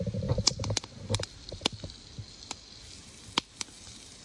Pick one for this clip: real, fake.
real